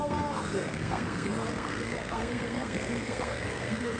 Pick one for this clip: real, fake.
fake